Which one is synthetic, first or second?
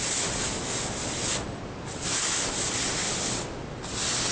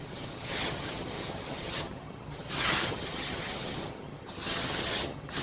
second